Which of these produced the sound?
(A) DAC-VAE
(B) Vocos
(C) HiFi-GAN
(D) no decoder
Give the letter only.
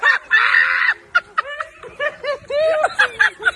D